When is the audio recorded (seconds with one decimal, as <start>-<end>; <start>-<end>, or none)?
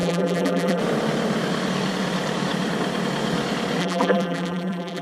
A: 0.8-3.8